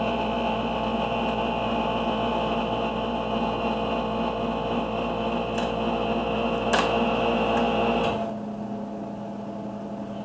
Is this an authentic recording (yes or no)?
yes